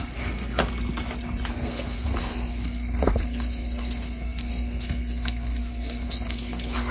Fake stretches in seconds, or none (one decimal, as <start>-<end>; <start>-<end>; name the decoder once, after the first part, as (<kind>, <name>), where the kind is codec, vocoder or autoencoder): 0.0-0.6 (codec, SNAC); 1.5-6.9